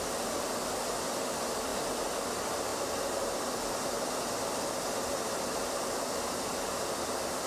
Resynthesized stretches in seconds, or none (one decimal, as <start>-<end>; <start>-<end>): 1.7-2.3

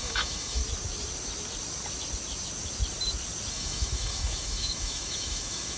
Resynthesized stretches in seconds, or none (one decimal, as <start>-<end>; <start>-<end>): 0.0-0.6; 3.5-5.8

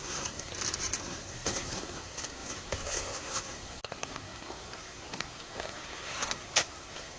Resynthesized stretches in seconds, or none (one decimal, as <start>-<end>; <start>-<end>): 0.0-0.5; 1.0-7.2

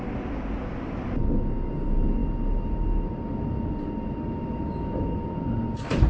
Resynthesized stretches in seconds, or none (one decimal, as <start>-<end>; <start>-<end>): none